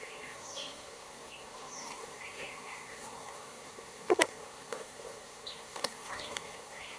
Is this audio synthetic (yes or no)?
yes